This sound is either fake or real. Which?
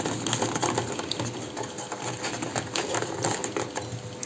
real